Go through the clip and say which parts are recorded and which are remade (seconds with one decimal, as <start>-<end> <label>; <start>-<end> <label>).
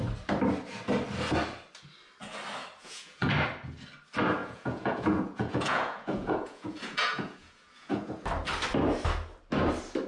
0.0-2.8 recorded; 2.8-3.3 remade; 3.3-4.4 recorded; 4.4-8.1 remade; 8.1-10.1 recorded